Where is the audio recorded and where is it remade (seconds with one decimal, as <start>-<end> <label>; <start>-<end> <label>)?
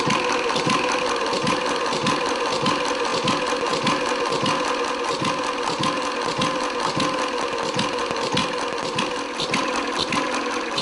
0.0-3.1 remade; 3.1-8.0 recorded; 8.0-8.4 remade; 8.4-9.0 recorded; 9.0-10.8 remade